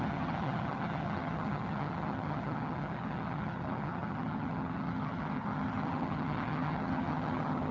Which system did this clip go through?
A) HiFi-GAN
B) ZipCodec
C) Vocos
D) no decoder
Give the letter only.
A